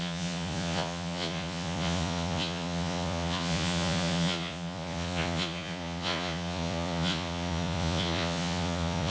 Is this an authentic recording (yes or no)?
no